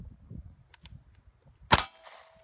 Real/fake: real